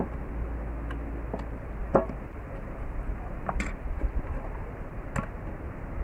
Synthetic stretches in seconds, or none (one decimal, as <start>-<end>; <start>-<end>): 1.8-5.0